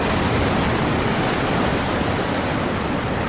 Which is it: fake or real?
real